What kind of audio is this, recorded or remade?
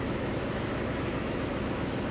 remade